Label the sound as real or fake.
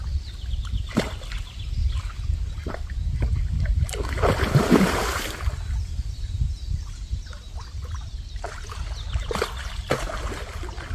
real